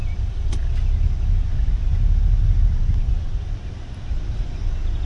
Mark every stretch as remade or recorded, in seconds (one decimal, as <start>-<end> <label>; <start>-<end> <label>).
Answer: 0.0-0.5 remade; 0.5-5.1 recorded